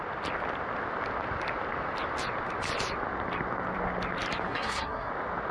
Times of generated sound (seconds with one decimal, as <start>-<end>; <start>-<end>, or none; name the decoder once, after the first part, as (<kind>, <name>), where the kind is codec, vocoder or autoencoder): 4.5-5.1 (codec, SNAC)